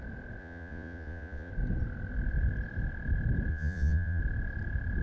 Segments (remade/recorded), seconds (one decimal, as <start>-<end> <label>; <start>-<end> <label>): 0.0-0.4 recorded; 0.4-1.5 remade; 1.5-3.5 recorded; 3.5-4.2 remade; 4.2-5.0 recorded